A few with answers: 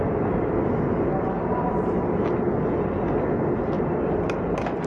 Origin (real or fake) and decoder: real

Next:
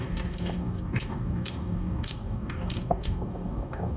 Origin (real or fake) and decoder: fake, codec, DAC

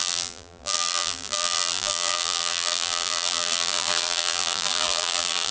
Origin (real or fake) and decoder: fake, vocoder, BigVGAN v2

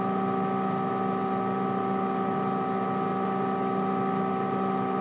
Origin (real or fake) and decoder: real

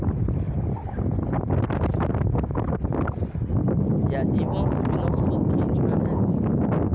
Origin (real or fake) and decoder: real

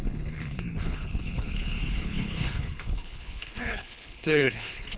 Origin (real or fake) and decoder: fake, codec, HILCodec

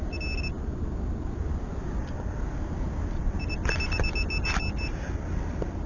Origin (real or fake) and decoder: real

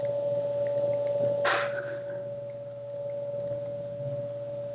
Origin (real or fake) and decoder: real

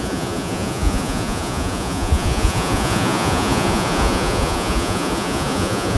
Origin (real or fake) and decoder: fake, vocoder, Vocos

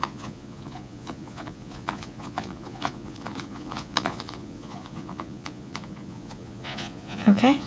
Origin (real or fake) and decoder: fake, vocoder, Vocos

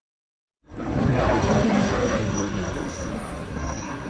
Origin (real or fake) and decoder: fake, codec, SNAC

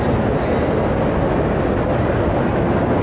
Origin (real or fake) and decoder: real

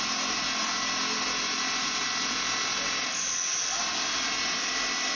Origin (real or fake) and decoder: real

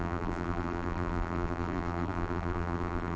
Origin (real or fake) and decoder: fake, vocoder, BigVGAN v2